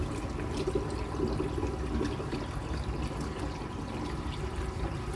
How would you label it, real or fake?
real